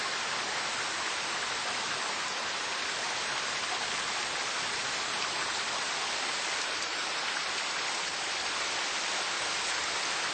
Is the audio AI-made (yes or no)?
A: no